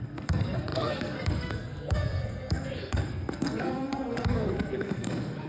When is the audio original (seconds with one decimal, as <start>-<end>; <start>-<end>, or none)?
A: none